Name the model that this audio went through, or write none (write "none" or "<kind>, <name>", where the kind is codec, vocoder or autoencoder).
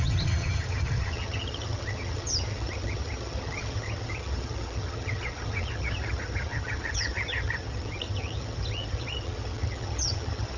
vocoder, HiFi-GAN